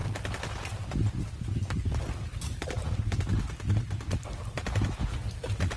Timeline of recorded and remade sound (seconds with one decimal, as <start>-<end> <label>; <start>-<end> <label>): 0.0-5.8 recorded

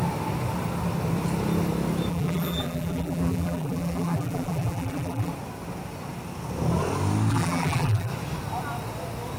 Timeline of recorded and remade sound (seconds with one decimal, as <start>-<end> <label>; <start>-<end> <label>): 0.0-2.1 recorded; 2.1-5.3 remade; 5.3-7.3 recorded; 7.3-8.1 remade; 8.1-9.4 recorded